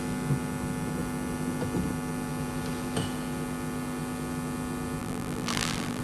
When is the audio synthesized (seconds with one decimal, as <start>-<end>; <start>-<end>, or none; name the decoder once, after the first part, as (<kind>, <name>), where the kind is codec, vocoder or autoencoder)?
5.0-6.0 (vocoder, BigVGAN v2)